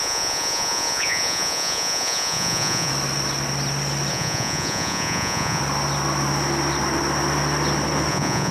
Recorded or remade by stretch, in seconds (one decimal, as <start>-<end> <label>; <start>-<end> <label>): 0.0-2.9 remade; 2.9-4.1 recorded; 4.1-5.6 remade; 5.6-8.1 recorded; 8.1-8.5 remade